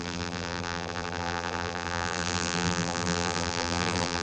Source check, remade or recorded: remade